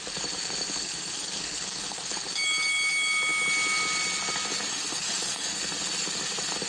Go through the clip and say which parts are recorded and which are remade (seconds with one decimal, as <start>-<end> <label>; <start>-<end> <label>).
0.0-0.8 recorded; 0.8-2.1 remade; 2.1-4.7 recorded; 4.7-5.6 remade; 5.6-6.7 recorded